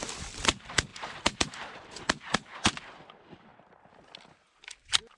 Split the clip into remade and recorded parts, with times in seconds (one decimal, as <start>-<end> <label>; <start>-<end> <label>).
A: 0.0-0.9 recorded; 0.9-1.9 remade; 1.9-5.2 recorded